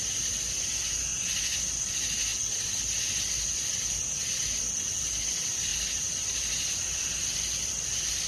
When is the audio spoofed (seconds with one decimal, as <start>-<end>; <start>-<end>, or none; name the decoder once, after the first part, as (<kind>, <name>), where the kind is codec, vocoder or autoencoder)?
none